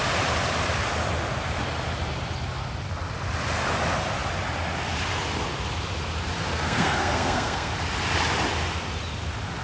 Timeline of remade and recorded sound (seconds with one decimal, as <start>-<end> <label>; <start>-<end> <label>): 0.0-6.5 recorded; 6.5-7.7 remade; 7.7-9.6 recorded